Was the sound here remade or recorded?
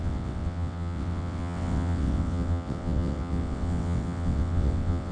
remade